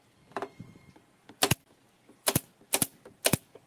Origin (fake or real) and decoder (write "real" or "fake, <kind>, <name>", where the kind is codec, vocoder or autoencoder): real